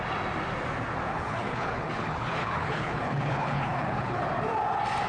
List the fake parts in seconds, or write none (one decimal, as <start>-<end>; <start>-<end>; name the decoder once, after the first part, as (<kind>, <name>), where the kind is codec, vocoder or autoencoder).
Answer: 1.1-4.2 (codec, HILCodec)